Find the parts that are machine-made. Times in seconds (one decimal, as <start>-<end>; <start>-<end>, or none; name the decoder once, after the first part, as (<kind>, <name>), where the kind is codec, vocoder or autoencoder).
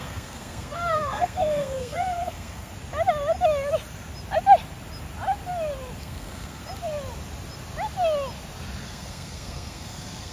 0.0-2.7 (codec, SNAC); 6.0-6.6; 8.8-10.3